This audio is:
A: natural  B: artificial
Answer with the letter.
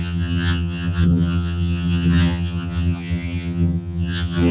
B